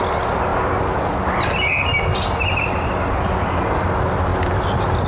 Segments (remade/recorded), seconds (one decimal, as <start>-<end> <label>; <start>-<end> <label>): 0.0-5.1 recorded